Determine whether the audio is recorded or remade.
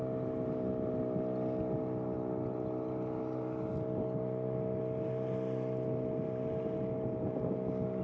recorded